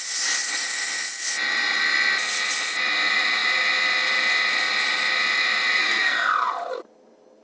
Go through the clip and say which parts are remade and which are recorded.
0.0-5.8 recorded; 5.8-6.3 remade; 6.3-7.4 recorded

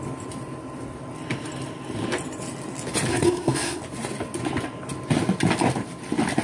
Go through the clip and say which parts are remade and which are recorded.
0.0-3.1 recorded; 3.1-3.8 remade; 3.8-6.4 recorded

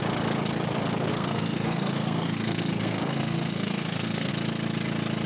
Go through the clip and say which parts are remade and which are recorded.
0.0-1.1 recorded; 1.1-4.3 remade; 4.3-5.3 recorded